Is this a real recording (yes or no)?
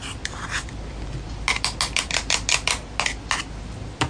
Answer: yes